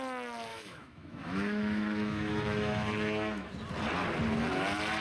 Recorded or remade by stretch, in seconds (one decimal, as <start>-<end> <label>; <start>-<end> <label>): 0.0-0.5 recorded; 0.5-3.5 remade; 3.5-5.0 recorded